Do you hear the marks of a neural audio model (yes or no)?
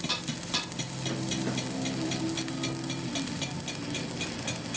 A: no